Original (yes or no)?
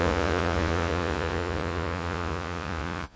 no